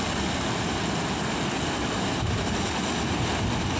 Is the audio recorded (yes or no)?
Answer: yes